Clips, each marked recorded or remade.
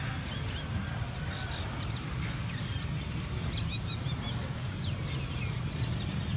recorded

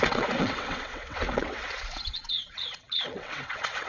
remade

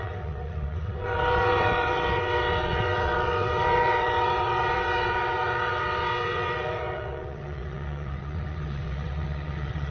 remade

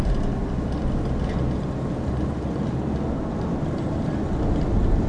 recorded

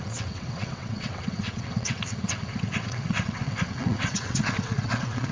remade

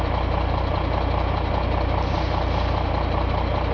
recorded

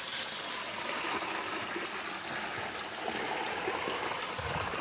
recorded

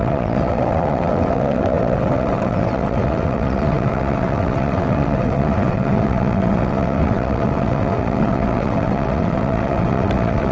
remade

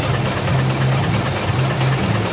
recorded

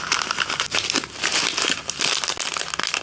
recorded